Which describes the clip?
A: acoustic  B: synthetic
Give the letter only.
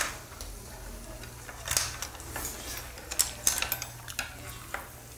A